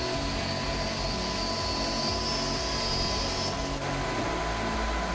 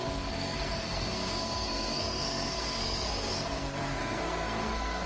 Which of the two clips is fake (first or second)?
second